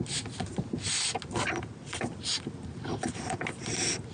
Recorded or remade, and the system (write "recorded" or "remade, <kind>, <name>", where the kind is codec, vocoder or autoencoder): recorded